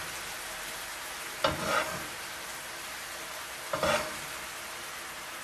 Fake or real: real